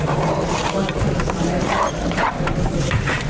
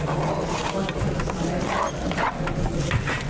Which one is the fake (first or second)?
first